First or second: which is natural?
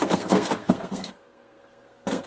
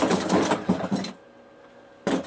second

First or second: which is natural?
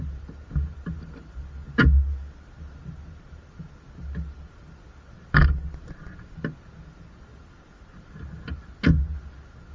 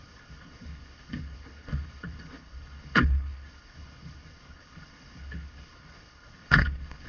first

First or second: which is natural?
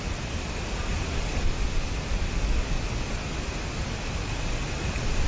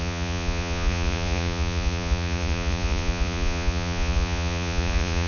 first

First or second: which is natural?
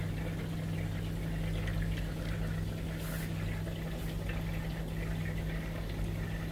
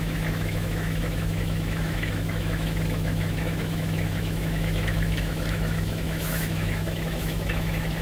first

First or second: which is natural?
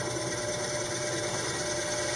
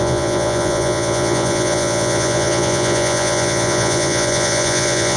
first